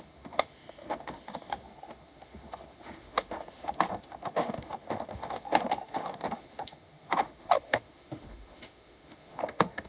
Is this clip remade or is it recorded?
remade